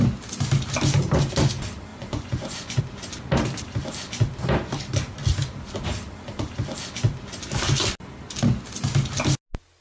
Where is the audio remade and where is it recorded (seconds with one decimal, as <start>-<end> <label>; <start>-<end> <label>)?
0.0-1.9 recorded; 1.9-2.8 remade; 2.8-9.8 recorded